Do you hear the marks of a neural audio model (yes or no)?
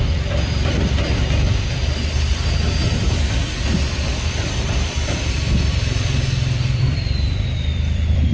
yes